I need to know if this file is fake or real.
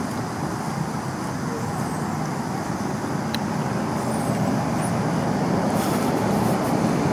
real